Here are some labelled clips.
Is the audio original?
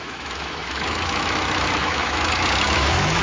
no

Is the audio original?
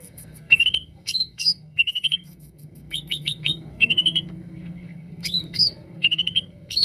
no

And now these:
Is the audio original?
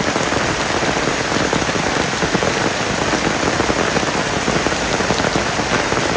yes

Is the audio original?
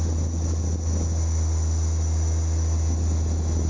yes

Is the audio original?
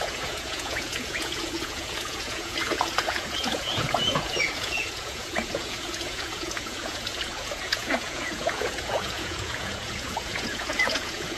no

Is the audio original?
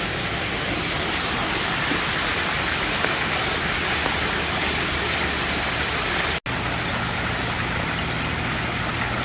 yes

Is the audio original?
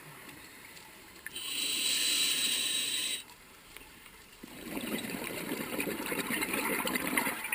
no